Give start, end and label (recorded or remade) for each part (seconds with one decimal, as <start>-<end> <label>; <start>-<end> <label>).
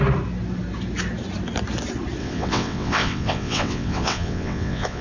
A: 0.0-2.2 recorded; 2.2-5.0 remade